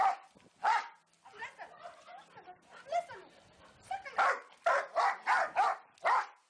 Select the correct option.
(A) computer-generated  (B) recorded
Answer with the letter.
B